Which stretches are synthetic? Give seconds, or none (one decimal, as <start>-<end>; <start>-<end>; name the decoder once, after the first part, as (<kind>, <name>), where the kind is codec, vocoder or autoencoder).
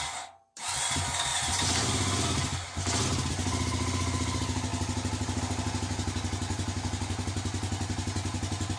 none